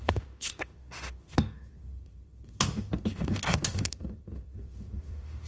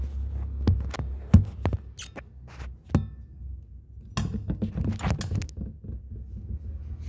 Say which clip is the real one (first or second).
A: second